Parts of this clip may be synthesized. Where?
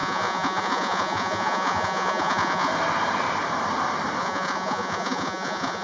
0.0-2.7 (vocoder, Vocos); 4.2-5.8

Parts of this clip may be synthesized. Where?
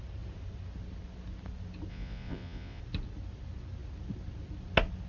1.9-2.8 (vocoder, Vocos)